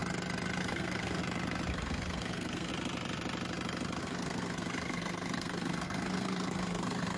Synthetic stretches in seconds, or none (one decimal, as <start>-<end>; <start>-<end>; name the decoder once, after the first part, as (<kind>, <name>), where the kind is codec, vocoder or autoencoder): 0.6-1.2 (codec, SNAC); 1.7-2.7; 4.0-7.2